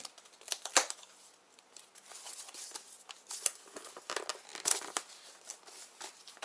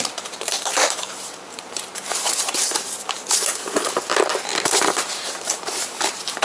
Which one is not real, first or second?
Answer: second